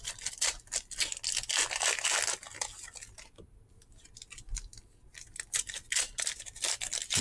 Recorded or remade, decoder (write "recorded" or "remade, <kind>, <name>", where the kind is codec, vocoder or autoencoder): recorded